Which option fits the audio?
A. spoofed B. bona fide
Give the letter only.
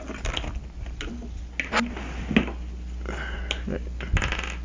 B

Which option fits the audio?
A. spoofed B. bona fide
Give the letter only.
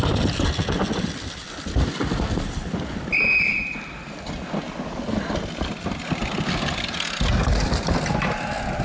B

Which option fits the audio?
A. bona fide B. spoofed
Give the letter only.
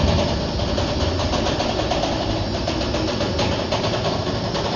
A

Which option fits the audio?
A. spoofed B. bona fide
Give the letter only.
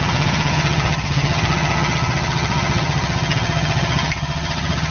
A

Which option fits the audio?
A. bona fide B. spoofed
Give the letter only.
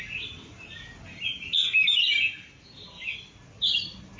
A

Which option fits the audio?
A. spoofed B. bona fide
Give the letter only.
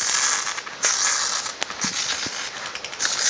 B